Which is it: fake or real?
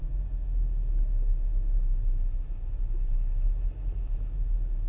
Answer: real